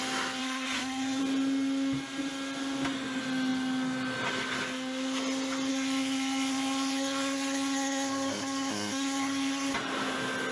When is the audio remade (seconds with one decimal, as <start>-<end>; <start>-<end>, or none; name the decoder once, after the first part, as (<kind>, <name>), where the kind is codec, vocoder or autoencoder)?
0.4-1.2 (codec, SNAC); 5.7-9.7